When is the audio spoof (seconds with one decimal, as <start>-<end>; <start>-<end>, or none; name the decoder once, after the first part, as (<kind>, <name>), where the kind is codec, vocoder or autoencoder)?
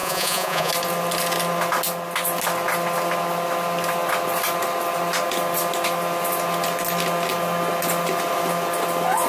0.0-0.7 (vocoder, Vocos)